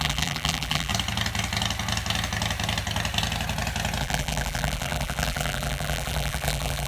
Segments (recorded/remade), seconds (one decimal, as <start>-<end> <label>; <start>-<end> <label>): 0.0-0.9 remade; 0.9-4.0 recorded; 4.0-6.9 remade